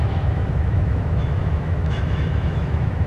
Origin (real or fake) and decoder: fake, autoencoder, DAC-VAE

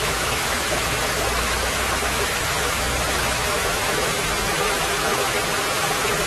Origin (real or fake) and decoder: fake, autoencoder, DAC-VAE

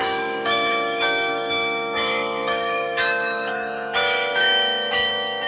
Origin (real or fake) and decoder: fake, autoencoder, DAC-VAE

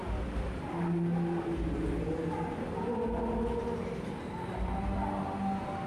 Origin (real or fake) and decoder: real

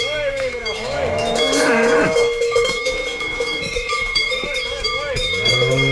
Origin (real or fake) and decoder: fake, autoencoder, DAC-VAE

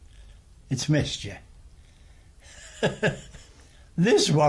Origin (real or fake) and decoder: real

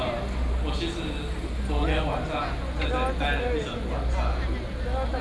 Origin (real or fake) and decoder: real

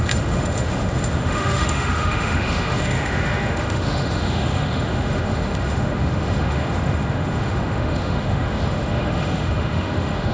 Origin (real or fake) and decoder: fake, autoencoder, DAC-VAE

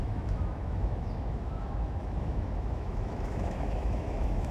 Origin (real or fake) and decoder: fake, autoencoder, DAC-VAE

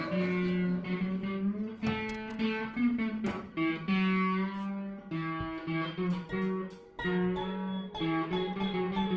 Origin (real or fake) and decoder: real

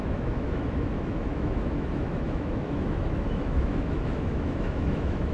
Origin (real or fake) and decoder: fake, autoencoder, DAC-VAE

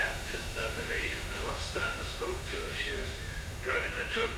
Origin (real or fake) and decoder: fake, autoencoder, DAC-VAE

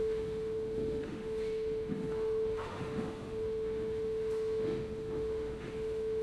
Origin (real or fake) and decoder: fake, autoencoder, DAC-VAE